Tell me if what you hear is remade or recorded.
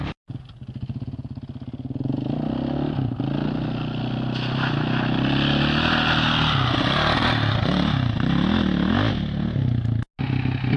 recorded